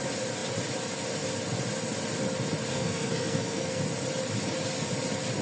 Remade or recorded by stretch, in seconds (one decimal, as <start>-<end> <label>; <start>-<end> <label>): 0.0-2.7 recorded; 2.7-3.8 remade; 3.8-5.4 recorded